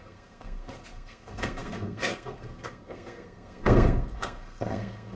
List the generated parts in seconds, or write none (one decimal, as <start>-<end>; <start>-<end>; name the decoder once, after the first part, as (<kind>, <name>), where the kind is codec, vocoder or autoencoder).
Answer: 0.0-5.2 (codec, SNAC)